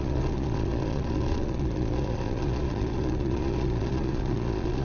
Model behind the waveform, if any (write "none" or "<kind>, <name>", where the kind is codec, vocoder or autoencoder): vocoder, Vocos